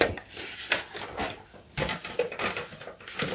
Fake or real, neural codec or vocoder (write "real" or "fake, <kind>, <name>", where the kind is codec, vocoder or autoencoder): real